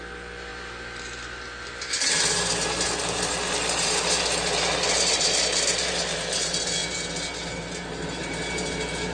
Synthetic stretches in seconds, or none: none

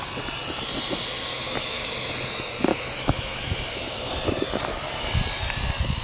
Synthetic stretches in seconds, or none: 1.3-2.2; 2.7-4.1

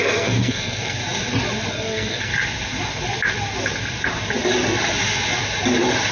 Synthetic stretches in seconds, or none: 0.0-1.0; 1.7-2.3

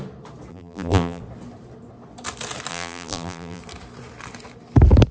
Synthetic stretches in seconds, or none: 0.5-1.2; 2.7-3.6

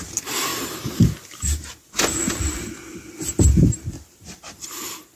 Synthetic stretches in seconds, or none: none

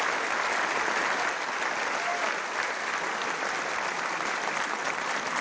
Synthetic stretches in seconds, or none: none

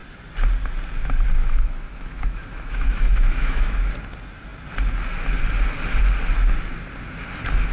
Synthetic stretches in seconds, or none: 1.4-3.9